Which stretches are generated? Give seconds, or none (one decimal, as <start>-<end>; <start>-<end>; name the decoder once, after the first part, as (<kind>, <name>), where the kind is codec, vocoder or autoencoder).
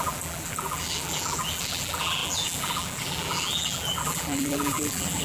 0.0-5.2 (vocoder, BigVGAN v2)